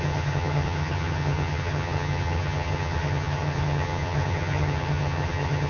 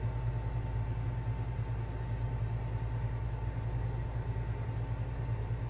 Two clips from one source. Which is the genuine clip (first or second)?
second